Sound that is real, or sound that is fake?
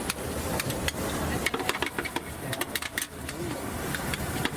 real